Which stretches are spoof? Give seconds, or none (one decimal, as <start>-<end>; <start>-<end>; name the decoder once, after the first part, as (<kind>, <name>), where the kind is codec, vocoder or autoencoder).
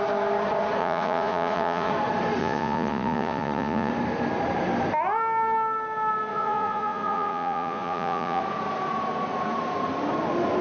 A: 0.8-1.9 (vocoder, Vocos); 2.4-3.9; 6.3-8.4